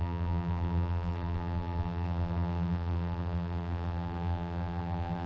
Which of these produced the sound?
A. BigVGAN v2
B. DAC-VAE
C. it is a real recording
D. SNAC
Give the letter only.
A